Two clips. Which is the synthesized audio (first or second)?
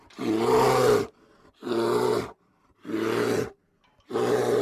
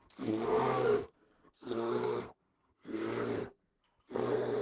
second